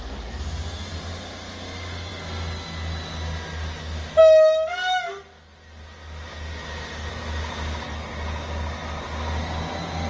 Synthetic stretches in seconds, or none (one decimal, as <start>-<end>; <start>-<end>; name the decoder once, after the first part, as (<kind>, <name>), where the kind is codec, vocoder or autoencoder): none